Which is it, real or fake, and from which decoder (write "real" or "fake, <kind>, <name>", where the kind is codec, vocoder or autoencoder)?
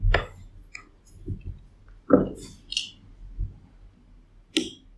real